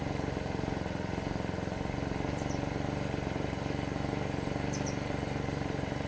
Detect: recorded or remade remade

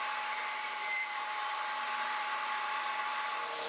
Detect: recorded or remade remade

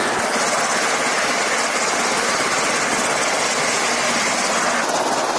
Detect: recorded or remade recorded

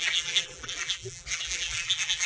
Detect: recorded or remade remade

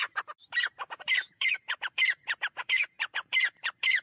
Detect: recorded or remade remade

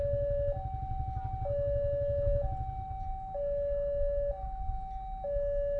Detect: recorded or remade recorded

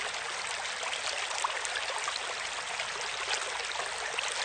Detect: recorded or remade recorded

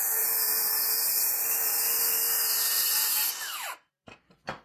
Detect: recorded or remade remade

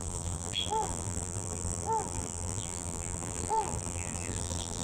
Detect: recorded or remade remade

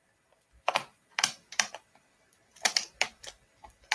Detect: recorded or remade remade